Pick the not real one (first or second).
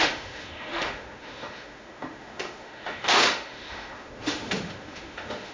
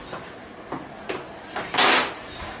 first